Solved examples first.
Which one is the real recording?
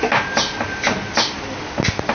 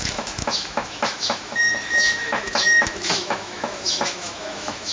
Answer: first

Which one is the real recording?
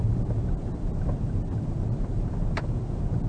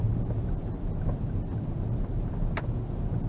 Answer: second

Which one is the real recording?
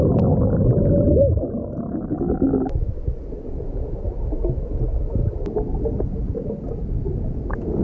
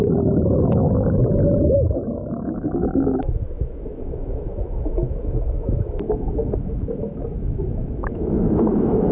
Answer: first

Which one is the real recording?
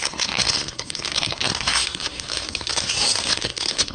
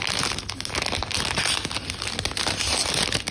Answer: second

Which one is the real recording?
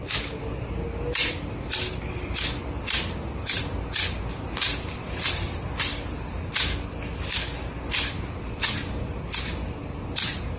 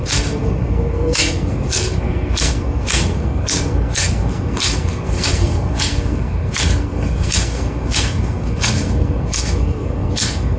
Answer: first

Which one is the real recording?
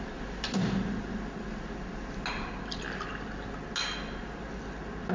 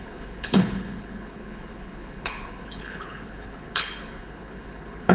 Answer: first